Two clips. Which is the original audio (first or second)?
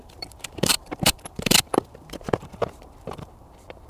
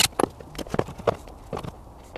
second